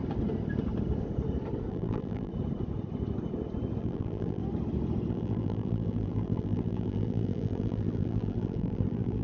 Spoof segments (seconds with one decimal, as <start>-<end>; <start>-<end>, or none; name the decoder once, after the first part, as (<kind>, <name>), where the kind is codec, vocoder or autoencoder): 1.7-2.3 (vocoder, BigVGAN v2); 3.8-4.4; 5.1-9.2